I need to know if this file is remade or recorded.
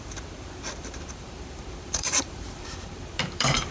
remade